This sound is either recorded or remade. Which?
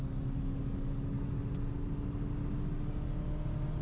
recorded